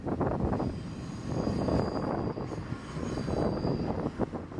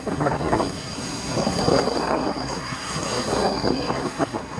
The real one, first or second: first